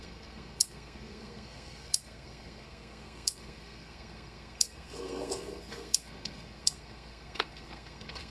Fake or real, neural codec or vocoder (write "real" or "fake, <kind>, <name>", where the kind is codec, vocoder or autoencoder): fake, codec, SNAC